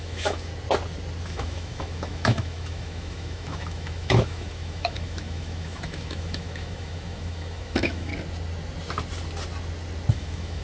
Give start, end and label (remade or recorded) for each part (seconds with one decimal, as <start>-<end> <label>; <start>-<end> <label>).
0.0-0.5 remade; 0.5-1.2 recorded; 1.2-8.1 remade; 8.1-10.1 recorded; 10.1-10.6 remade

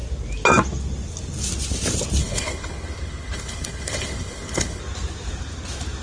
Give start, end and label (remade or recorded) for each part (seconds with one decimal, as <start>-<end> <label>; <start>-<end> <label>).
0.0-2.2 recorded; 2.2-4.8 remade; 4.8-6.0 recorded

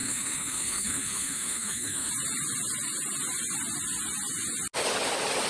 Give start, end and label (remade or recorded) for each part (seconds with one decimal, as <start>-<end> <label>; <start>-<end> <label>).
0.0-2.1 remade; 2.1-5.5 recorded

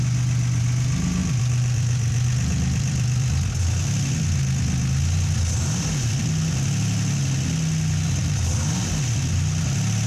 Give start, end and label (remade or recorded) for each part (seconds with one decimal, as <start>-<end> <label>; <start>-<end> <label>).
0.0-1.2 recorded; 1.2-3.3 remade; 3.3-8.2 recorded; 8.2-8.7 remade; 8.7-10.1 recorded

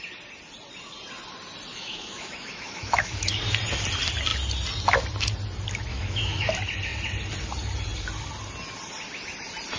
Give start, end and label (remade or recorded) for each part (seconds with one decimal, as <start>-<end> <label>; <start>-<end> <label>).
0.0-1.7 recorded; 1.7-3.4 remade; 3.4-5.9 recorded; 5.9-6.5 remade; 6.5-9.8 recorded